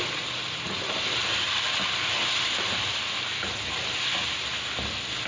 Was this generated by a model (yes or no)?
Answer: no